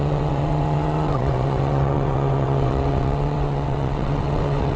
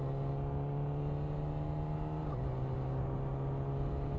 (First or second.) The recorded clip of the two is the second